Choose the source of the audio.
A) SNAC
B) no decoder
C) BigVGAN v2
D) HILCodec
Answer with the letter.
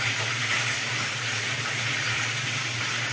B